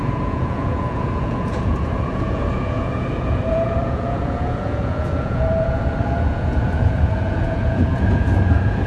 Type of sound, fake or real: fake